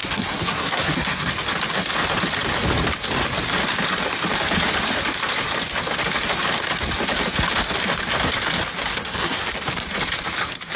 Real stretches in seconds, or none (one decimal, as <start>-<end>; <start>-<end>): 1.3-8.9; 9.5-10.8